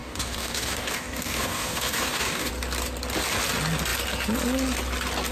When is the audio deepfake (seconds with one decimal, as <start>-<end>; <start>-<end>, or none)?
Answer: 0.0-2.5